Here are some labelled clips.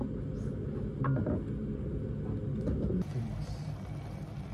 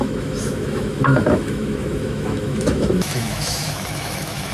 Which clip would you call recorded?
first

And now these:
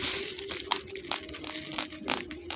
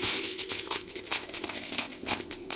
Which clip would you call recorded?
first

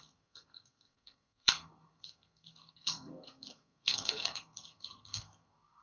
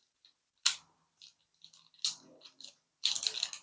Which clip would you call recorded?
second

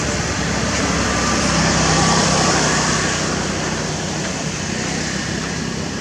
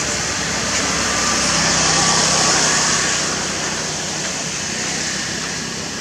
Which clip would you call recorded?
second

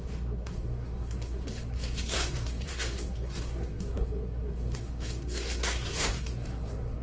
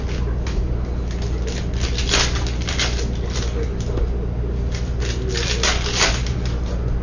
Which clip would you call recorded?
second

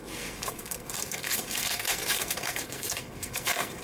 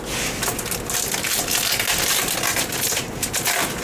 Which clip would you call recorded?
second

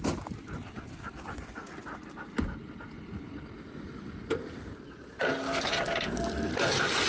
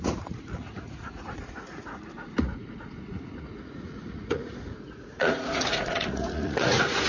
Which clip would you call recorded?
first